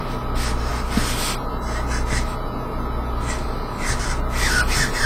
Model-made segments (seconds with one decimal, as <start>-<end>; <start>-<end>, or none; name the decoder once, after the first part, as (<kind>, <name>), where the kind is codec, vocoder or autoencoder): none

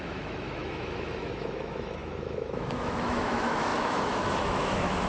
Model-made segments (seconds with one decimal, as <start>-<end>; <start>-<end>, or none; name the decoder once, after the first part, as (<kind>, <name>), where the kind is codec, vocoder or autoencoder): 0.0-5.1 (autoencoder, DAC-VAE)

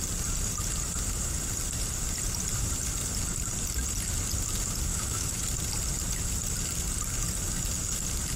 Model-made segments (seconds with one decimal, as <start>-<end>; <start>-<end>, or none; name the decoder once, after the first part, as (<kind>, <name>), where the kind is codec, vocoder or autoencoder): 4.9-5.4 (autoencoder, DAC-VAE)

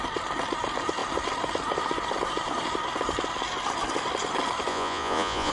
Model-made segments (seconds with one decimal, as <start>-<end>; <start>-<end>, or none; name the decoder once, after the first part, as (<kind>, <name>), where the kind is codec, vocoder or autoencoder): 4.7-5.5 (vocoder, Vocos)

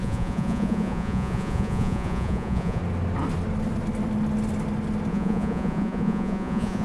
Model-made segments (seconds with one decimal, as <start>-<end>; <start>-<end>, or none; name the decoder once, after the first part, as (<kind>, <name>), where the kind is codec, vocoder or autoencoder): 0.0-2.8 (vocoder, Vocos); 5.1-6.8

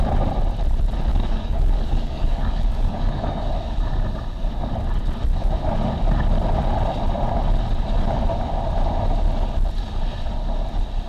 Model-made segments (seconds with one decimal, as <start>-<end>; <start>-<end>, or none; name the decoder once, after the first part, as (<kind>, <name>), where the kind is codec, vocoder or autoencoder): 1.1-3.5 (codec, DAC)

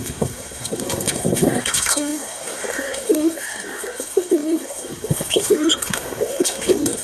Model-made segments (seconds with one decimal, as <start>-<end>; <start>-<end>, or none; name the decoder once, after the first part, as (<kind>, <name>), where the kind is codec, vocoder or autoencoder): 0.0-7.0 (codec, SNAC)